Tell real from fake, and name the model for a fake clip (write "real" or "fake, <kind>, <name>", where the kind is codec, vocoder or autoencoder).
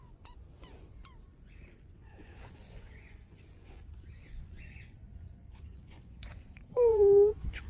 fake, vocoder, Vocos